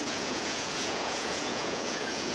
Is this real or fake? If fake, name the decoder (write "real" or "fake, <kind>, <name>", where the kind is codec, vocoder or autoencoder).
fake, vocoder, Vocos